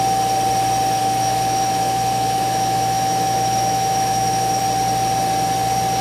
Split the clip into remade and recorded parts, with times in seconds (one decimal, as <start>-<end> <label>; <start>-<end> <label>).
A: 0.0-1.0 recorded; 1.0-4.6 remade; 4.6-6.0 recorded